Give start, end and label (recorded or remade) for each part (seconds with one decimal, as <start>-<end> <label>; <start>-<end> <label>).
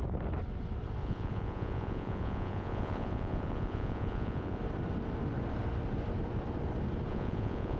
0.0-1.0 recorded; 1.0-4.6 remade; 4.6-7.1 recorded; 7.1-7.8 remade